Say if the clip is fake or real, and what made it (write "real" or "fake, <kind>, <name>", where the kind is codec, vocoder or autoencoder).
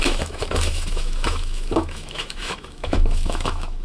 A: fake, autoencoder, DAC-VAE